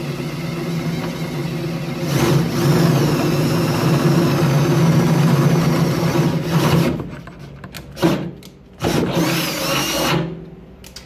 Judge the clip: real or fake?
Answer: real